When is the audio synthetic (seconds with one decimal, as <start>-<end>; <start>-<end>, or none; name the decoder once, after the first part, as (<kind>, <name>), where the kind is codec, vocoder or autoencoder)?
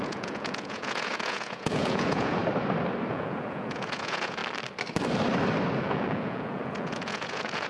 0.0-2.4 (vocoder, Vocos); 3.1-4.4; 5.8-7.7